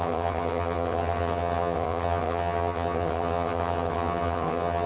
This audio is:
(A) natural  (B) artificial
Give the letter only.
B